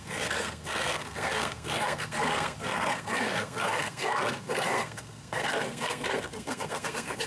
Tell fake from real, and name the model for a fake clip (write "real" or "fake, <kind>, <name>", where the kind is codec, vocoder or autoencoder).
fake, codec, SNAC